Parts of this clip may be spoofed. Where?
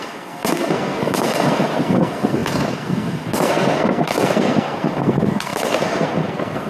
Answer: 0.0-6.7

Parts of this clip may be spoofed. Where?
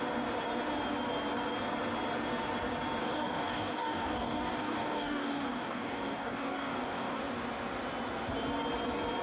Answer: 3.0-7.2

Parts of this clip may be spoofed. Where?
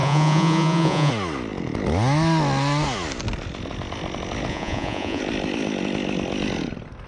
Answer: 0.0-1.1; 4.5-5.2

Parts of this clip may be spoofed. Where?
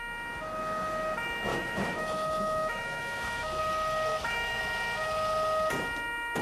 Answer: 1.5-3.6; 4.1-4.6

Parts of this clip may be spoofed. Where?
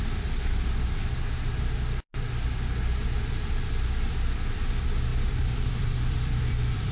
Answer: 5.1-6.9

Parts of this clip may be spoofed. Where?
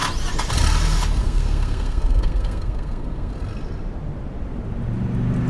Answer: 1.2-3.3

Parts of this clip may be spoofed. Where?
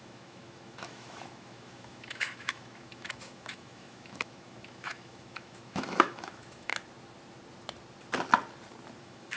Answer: 0.0-6.7; 9.0-9.4